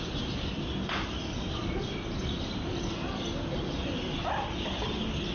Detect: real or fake real